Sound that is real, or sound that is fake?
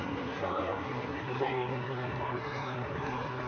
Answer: fake